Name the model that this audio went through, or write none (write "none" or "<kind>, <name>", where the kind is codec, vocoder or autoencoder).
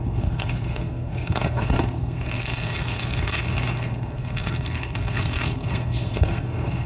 codec, SNAC